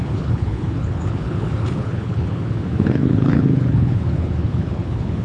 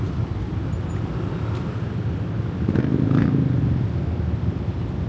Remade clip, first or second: first